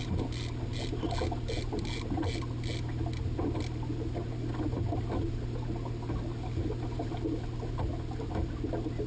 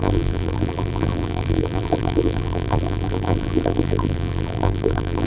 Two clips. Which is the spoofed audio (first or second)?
second